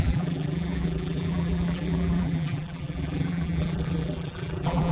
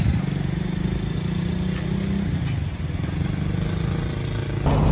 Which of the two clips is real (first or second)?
second